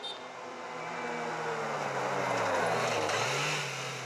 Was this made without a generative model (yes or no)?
yes